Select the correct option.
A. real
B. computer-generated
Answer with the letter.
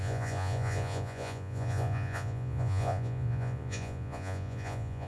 B